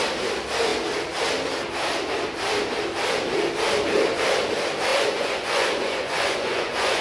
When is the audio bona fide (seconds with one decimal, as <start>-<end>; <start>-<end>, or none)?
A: 0.0-4.9

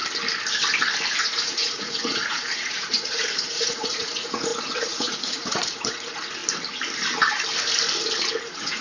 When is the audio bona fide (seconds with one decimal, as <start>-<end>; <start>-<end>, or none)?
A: 0.0-1.1; 6.4-8.4

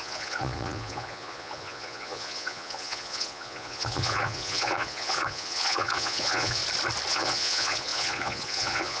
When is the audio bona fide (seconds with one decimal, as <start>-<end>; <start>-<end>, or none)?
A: 6.6-7.1

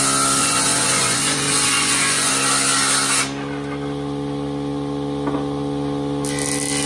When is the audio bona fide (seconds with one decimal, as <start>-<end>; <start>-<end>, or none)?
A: 0.0-0.4; 2.3-6.9

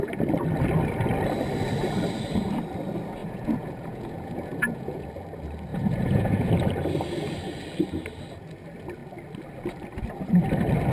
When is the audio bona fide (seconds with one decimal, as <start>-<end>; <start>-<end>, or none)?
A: 0.0-3.2; 5.1-5.7; 6.5-10.9